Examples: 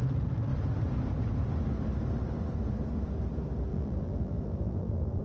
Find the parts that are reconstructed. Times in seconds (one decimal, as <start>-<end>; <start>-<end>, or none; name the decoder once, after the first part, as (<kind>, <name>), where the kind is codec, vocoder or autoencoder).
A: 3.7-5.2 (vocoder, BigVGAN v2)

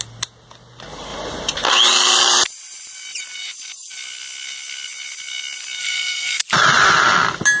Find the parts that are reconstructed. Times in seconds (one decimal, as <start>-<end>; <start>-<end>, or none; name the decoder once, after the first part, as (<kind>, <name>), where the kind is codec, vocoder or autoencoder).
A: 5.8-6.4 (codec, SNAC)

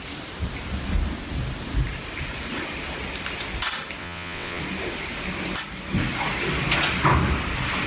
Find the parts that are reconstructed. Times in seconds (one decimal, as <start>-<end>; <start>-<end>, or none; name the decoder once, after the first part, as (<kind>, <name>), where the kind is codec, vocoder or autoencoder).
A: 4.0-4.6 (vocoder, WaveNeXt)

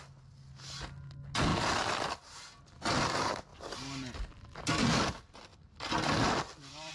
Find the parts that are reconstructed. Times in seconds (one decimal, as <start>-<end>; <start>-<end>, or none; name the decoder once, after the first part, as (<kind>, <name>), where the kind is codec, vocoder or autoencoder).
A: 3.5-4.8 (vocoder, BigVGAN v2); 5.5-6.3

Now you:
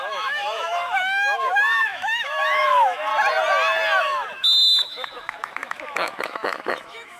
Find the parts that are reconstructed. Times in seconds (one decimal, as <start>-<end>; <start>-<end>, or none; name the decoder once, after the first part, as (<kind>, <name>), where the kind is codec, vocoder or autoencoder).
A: 0.0-3.1 (autoencoder, DAC-VAE); 4.0-7.2